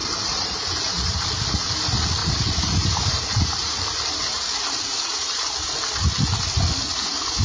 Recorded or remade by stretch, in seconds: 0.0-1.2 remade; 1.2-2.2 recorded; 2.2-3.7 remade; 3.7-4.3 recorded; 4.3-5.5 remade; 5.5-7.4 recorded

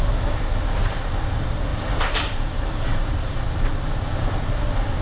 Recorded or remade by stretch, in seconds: 0.0-1.7 recorded; 1.7-4.0 remade; 4.0-5.0 recorded